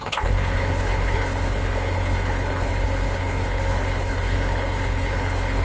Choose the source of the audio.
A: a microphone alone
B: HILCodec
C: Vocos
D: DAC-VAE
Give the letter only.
B